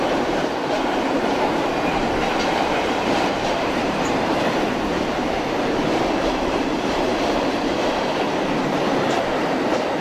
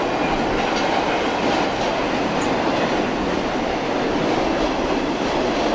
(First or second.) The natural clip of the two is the second